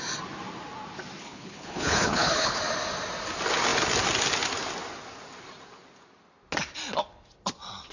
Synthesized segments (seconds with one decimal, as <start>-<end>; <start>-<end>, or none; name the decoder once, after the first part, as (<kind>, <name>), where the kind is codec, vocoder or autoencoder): 1.2-2.6 (codec, HILCodec)

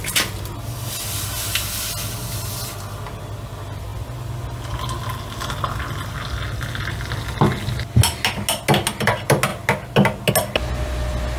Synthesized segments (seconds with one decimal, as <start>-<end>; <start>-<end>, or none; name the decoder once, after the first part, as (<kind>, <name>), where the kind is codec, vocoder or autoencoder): none

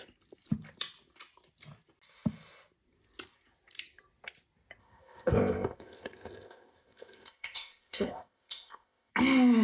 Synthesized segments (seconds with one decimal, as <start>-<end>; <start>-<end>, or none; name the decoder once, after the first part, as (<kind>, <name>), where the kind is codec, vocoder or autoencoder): 4.8-9.1 (codec, ZipCodec)

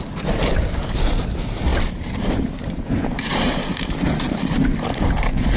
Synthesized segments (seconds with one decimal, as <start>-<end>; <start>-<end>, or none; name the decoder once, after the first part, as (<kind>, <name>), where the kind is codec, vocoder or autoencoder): 1.7-5.1 (vocoder, BigVGAN v2)